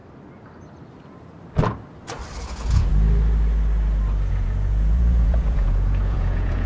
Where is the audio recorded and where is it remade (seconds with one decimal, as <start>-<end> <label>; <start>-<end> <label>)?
0.0-2.4 recorded; 2.4-2.9 remade; 2.9-4.3 recorded; 4.3-6.7 remade